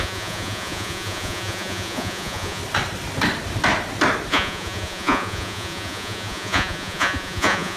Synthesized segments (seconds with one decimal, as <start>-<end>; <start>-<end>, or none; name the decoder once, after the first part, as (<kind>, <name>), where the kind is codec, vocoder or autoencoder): 0.0-2.6 (vocoder, Vocos); 4.3-7.8